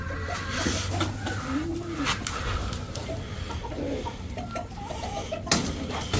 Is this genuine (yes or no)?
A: yes